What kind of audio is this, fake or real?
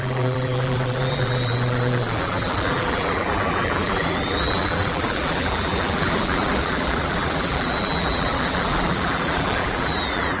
fake